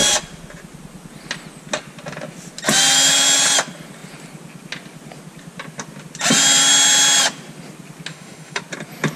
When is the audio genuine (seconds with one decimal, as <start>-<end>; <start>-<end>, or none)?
0.0-8.1; 8.6-9.2